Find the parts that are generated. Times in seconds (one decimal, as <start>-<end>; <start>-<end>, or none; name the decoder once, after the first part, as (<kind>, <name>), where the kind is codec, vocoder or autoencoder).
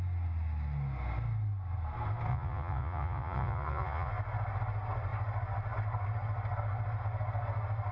2.3-4.1 (vocoder, Vocos)